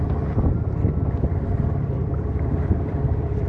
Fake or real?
fake